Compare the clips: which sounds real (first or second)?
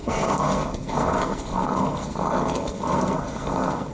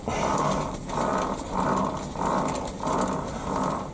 second